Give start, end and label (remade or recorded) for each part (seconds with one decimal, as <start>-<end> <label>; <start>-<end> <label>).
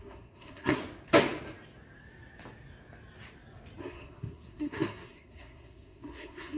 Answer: 0.0-0.8 remade; 0.8-3.8 recorded; 3.8-6.6 remade